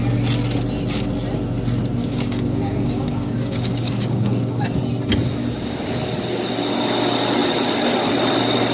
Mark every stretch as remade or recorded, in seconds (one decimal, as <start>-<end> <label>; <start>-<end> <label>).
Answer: 0.0-2.0 recorded; 2.0-4.8 remade; 4.8-5.4 recorded; 5.4-6.0 remade; 6.0-8.7 recorded